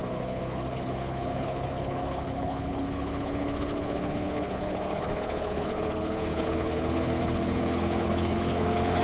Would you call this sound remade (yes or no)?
yes